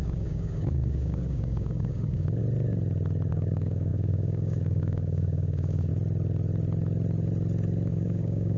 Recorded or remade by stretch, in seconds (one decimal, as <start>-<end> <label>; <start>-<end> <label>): 0.0-2.4 remade; 2.4-3.3 recorded; 3.3-5.9 remade; 5.9-7.9 recorded; 7.9-8.6 remade

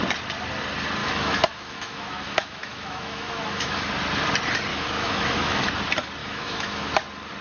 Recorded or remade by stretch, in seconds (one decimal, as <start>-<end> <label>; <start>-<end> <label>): 0.0-1.0 recorded; 1.0-3.9 remade; 3.9-4.7 recorded; 4.7-5.6 remade; 5.6-6.2 recorded; 6.2-6.9 remade; 6.9-7.4 recorded

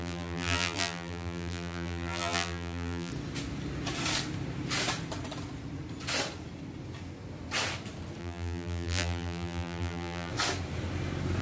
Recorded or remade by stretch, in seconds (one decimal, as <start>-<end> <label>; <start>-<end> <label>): 0.0-3.1 remade; 3.1-8.2 recorded; 8.2-10.3 remade; 10.3-11.4 recorded